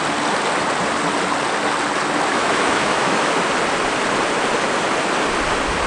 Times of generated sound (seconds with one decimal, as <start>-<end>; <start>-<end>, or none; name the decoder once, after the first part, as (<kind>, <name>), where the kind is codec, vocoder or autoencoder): 2.3-3.2 (autoencoder, DAC-VAE)